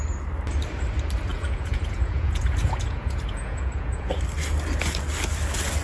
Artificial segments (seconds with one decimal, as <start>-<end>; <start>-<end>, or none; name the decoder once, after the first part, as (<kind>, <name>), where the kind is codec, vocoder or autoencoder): 1.3-4.1 (vocoder, Vocos)